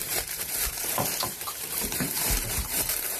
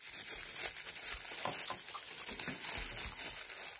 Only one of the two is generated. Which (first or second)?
first